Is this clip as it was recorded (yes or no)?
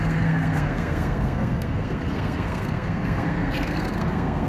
no